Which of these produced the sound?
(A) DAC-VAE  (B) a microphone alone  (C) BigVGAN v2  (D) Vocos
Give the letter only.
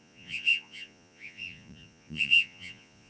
D